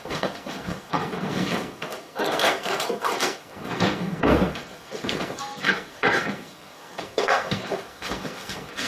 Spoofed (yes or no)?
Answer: yes